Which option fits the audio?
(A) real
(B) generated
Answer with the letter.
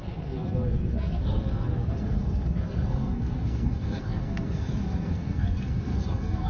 B